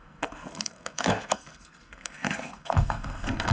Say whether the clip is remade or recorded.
remade